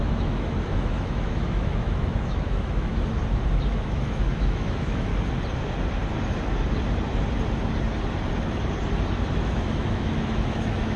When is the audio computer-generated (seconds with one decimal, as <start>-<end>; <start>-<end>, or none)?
0.0-2.9; 3.7-5.1; 9.3-11.0